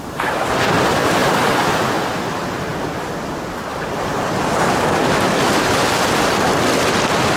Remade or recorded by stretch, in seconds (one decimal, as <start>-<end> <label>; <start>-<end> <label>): 0.0-7.4 recorded